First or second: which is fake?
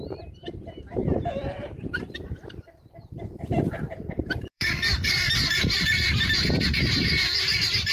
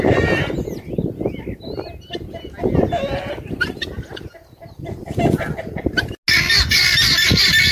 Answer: first